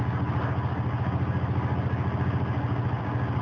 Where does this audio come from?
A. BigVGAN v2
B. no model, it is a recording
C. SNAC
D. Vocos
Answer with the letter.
B